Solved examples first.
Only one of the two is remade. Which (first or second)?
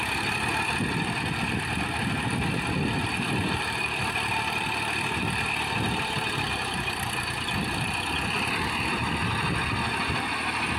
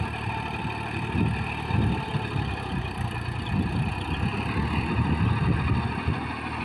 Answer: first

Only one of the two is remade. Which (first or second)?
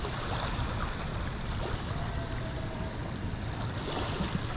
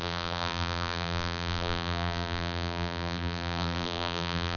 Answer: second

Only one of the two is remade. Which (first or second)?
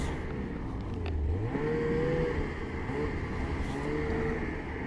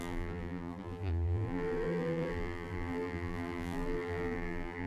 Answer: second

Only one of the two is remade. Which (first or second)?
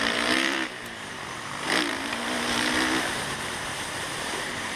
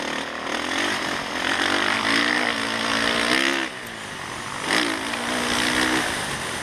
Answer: first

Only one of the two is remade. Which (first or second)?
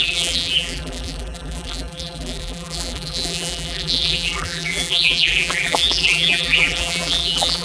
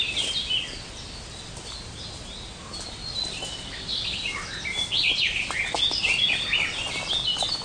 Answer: first